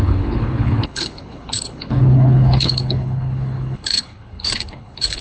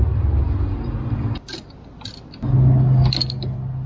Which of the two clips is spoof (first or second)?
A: first